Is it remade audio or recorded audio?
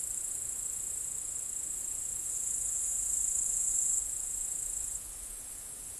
remade